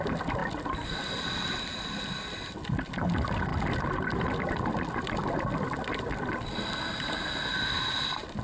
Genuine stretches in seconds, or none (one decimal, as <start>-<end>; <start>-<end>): 0.0-8.4